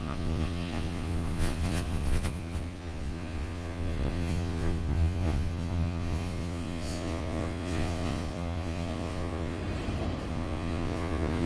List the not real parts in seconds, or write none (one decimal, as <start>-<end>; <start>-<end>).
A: 0.0-9.6; 10.3-11.5